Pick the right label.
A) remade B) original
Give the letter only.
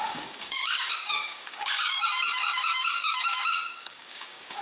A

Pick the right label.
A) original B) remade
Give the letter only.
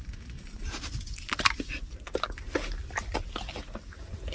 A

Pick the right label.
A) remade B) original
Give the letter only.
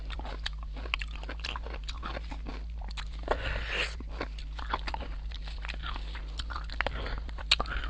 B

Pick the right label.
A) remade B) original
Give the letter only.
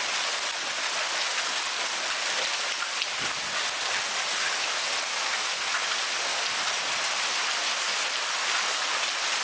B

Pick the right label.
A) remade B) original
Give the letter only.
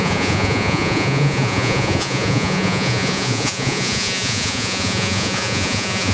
A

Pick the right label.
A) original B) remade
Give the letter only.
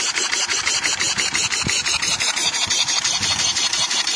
B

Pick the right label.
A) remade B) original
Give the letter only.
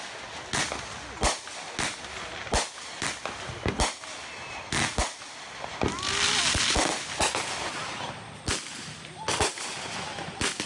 B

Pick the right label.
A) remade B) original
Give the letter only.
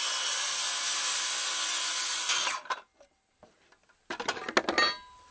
B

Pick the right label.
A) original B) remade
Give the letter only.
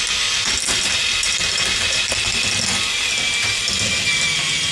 A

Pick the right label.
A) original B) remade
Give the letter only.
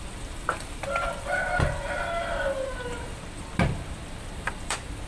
B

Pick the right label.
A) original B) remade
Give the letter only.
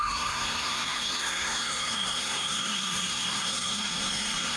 B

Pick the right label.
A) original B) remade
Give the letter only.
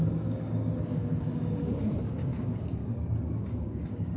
B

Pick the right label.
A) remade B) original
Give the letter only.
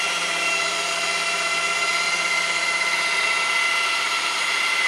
A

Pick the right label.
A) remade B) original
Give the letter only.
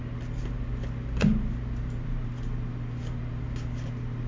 B